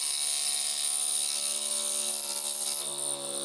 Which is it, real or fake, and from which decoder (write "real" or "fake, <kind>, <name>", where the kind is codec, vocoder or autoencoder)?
real